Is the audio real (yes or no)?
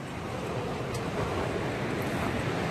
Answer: yes